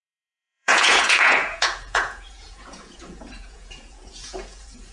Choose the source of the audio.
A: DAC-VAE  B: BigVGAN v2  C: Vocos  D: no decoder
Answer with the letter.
C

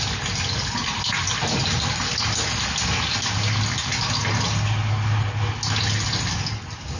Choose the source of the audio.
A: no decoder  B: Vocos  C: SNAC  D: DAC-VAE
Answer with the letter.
A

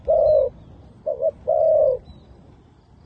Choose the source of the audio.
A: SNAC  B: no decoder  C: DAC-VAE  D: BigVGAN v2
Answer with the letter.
B